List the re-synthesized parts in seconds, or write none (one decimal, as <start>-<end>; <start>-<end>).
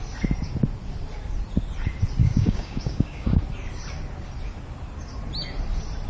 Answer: 2.2-3.4